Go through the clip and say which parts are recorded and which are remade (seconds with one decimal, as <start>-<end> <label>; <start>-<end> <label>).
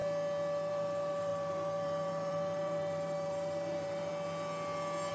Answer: 0.0-0.7 recorded; 0.7-4.1 remade; 4.1-5.1 recorded